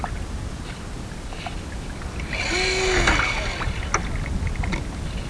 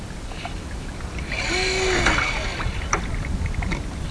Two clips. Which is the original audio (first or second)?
first